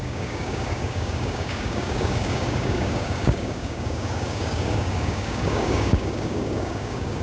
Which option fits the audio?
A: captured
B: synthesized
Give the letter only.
B